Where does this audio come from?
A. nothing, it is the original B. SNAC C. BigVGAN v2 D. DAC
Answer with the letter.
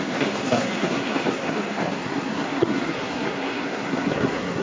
B